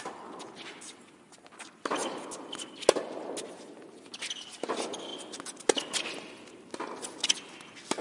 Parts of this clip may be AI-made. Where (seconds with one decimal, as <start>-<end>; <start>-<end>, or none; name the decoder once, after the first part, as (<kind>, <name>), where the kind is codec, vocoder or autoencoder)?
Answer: none

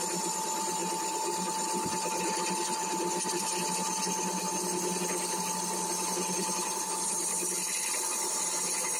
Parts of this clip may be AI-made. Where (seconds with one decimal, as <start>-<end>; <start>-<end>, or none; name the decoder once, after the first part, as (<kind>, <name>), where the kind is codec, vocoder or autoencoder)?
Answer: 0.0-0.8 (vocoder, BigVGAN v2); 3.3-9.0

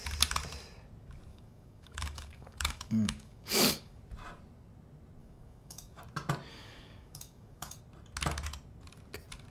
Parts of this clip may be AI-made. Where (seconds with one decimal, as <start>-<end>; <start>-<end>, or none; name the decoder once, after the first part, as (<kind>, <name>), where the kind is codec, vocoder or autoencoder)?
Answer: 1.3-4.0 (codec, DAC); 5.2-6.0; 6.5-7.8

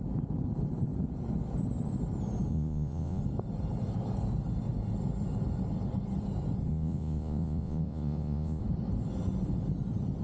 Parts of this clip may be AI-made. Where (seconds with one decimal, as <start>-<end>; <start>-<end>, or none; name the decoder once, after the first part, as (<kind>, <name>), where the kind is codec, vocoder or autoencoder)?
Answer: 2.5-3.2 (vocoder, Vocos); 6.7-8.6